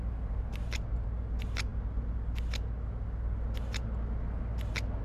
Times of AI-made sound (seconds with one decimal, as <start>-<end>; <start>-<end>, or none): none